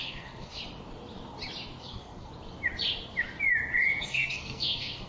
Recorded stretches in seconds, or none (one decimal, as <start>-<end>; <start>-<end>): 0.6-1.8; 2.3-4.0